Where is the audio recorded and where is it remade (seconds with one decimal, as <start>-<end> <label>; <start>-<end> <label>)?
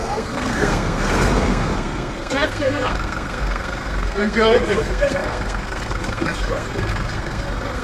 0.0-7.8 remade